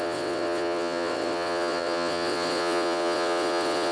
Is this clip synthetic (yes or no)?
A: yes